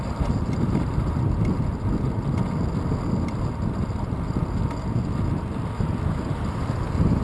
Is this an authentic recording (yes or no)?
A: yes